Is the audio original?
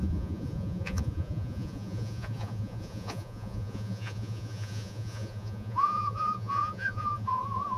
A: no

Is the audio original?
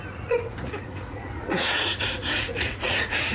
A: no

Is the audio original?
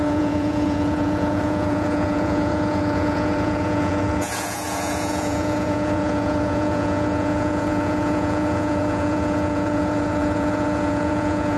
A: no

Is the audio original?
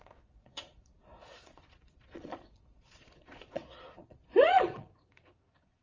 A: no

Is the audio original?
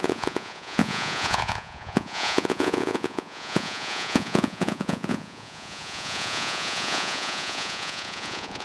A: no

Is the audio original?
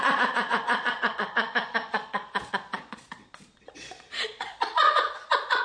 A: no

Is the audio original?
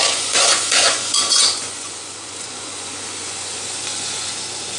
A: no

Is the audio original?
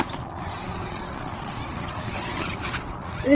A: no